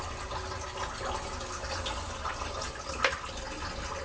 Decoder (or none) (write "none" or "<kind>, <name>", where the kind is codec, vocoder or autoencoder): none